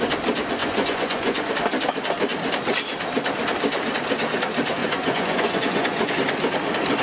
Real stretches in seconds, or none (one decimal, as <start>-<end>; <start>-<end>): 0.0-0.6; 1.5-4.8; 6.1-7.0